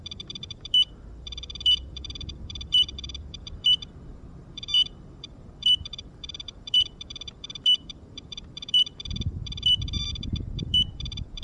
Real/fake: fake